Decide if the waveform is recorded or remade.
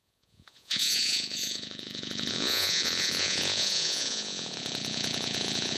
remade